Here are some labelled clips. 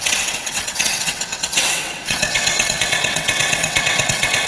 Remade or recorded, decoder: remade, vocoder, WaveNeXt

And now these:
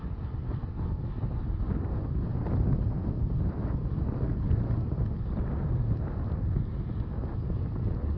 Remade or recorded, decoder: recorded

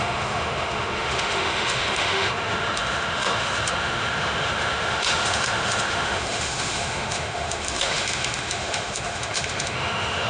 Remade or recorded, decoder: remade, autoencoder, DAC-VAE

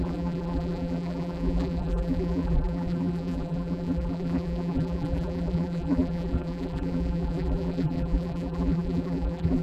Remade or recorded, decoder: remade, vocoder, BigVGAN v2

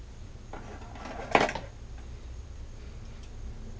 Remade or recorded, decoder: recorded